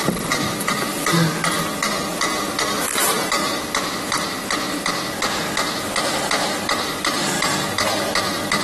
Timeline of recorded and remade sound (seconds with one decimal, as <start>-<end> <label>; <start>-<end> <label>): 0.0-8.6 recorded